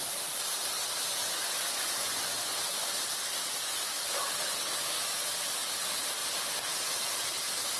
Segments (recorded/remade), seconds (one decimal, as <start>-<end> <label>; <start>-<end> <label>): 0.0-1.2 recorded; 1.2-2.8 remade; 2.8-7.8 recorded